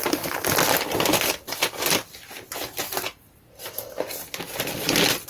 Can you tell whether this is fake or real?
real